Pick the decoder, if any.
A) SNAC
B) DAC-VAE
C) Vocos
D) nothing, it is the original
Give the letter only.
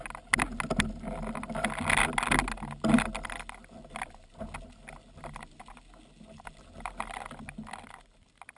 D